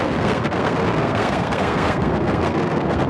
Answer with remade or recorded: remade